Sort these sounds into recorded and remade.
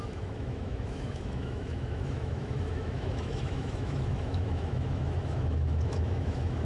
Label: remade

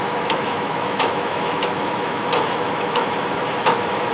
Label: remade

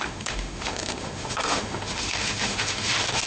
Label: remade